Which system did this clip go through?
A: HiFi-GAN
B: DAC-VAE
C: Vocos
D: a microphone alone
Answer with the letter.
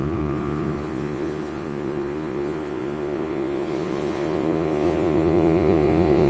C